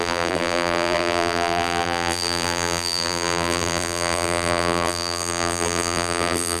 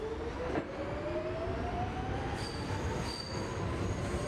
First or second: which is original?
second